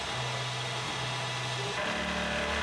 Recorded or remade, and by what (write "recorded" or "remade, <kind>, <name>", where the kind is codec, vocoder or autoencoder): recorded